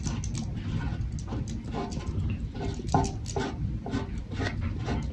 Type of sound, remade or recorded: recorded